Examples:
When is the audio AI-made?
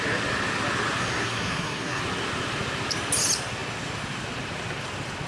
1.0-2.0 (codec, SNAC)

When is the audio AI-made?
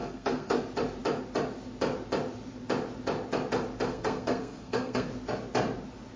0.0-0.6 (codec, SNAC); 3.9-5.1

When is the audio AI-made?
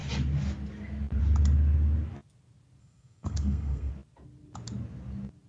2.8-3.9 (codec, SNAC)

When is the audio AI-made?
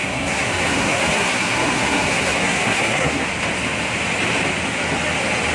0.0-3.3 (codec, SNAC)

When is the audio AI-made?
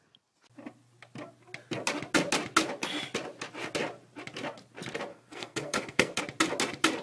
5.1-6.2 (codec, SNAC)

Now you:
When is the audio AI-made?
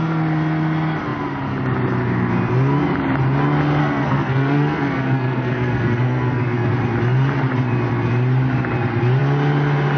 3.8-6.7 (codec, SNAC)